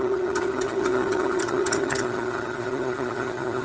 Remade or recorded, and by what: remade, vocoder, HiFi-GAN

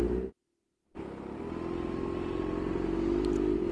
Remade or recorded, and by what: recorded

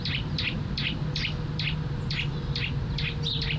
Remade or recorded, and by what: recorded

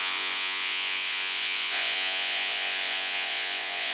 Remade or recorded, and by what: remade, vocoder, Vocos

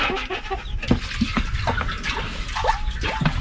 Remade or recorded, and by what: recorded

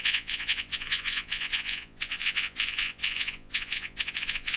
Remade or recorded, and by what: remade, vocoder, Vocos